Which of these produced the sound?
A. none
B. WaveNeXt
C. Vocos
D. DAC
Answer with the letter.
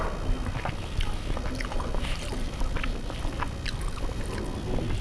A